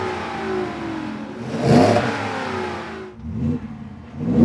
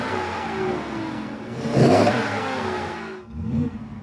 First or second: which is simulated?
second